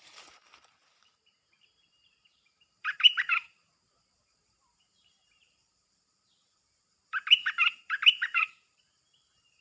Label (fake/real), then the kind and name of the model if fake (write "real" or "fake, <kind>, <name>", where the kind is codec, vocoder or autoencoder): fake, vocoder, BigVGAN v2